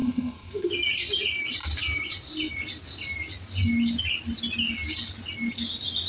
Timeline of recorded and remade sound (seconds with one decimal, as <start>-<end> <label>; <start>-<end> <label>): 0.0-0.7 remade; 0.7-6.1 recorded

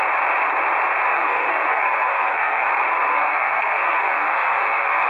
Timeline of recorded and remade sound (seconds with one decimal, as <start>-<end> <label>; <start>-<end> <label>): 0.0-1.1 recorded; 1.1-2.7 remade; 2.7-3.1 recorded; 3.1-5.1 remade